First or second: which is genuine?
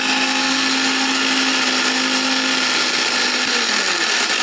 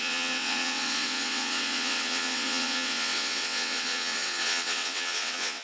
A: first